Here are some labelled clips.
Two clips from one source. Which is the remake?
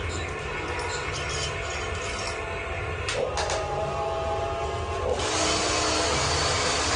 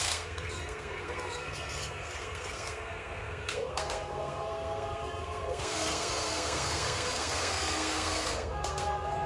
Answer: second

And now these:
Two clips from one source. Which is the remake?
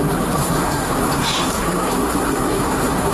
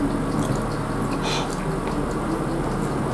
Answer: first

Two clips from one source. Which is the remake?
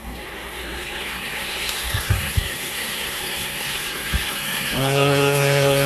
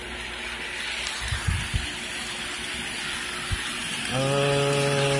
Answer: first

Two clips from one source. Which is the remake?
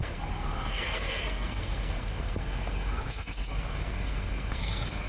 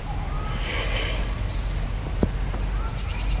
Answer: first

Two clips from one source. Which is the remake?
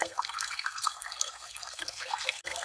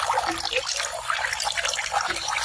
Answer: first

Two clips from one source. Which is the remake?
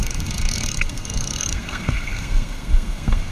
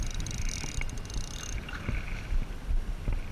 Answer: first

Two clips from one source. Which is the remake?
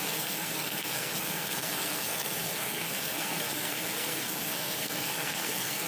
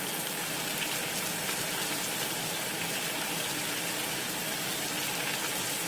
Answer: first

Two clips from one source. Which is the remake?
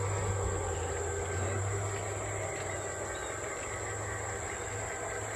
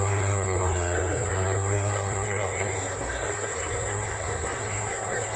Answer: second